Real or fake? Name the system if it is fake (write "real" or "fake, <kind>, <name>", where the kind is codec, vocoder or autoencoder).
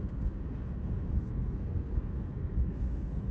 fake, codec, SNAC